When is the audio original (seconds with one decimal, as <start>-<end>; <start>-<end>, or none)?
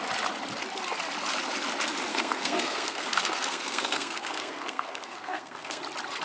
0.0-2.1; 5.8-6.2